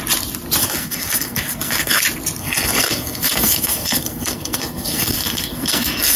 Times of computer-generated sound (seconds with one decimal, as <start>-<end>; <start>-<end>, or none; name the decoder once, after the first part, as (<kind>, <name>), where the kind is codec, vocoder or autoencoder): 0.6-2.0 (codec, SNAC); 2.4-6.2